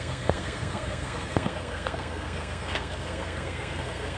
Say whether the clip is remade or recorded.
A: remade